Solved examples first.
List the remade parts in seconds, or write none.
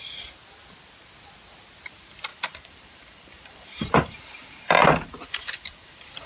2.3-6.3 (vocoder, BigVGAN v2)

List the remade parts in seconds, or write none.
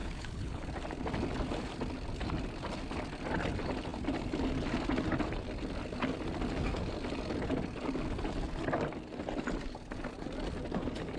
0.0-0.6 (codec, HILCodec)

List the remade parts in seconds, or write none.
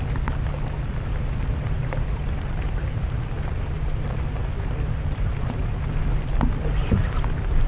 1.5-5.9 (vocoder, BigVGAN v2)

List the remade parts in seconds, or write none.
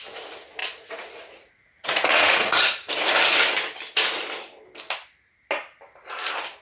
0.6-2.9 (vocoder, Vocos)